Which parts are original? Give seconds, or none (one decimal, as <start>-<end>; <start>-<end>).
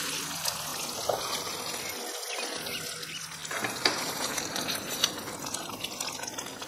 0.0-3.4; 5.1-6.7